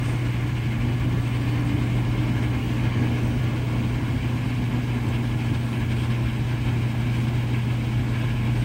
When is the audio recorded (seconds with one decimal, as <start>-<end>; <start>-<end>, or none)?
0.0-2.6; 3.4-8.6